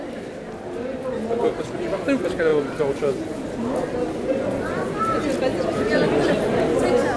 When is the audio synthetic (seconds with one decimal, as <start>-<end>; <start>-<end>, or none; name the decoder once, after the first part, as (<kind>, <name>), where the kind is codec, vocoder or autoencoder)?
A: 5.5-6.3 (vocoder, BigVGAN v2)